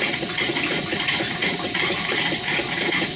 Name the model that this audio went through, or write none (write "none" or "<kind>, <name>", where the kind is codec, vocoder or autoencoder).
vocoder, Vocos